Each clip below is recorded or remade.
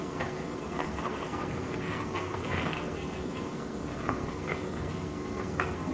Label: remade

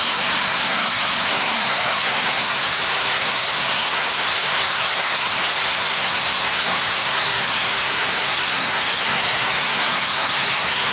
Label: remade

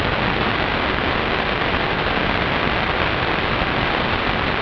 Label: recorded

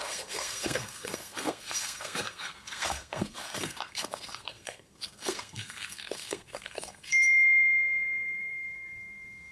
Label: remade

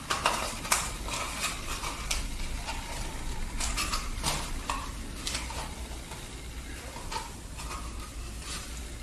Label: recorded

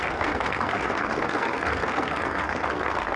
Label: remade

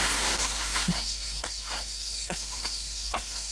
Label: remade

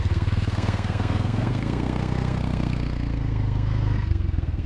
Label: remade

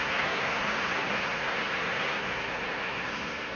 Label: remade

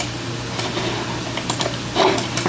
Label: recorded